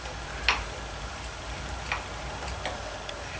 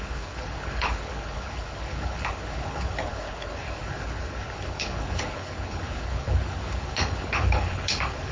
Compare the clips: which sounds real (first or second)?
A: first